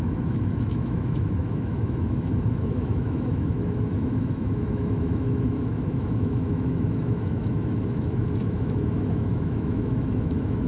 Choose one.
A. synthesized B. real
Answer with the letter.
A